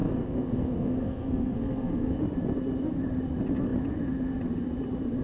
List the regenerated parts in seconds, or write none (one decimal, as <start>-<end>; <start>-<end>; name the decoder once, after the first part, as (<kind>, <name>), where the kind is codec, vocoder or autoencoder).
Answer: 0.0-2.2 (codec, SNAC)